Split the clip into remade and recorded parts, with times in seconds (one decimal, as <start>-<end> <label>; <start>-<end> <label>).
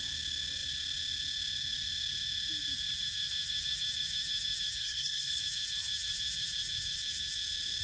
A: 0.0-4.8 recorded; 4.8-5.4 remade; 5.4-7.8 recorded